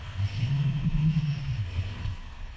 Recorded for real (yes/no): no